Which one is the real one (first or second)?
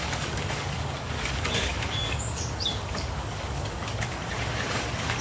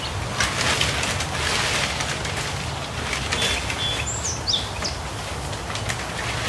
second